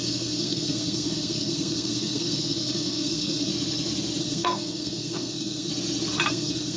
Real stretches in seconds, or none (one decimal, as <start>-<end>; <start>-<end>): 3.5-4.2; 5.7-6.3